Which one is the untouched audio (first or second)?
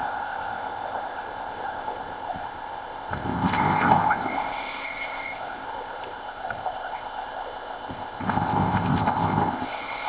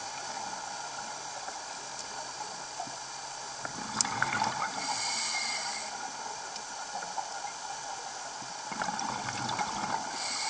second